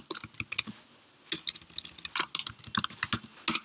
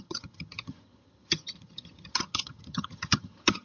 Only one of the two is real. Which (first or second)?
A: first